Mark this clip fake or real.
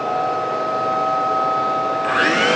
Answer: real